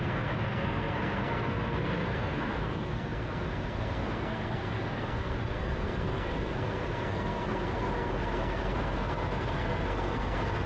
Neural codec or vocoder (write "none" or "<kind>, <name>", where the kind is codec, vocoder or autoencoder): codec, SNAC